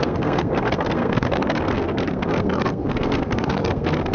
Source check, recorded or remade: remade